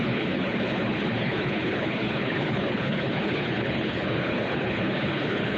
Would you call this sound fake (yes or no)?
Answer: yes